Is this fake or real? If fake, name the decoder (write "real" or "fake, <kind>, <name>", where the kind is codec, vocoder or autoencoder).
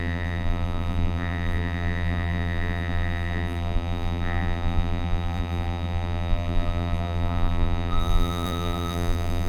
fake, vocoder, BigVGAN v2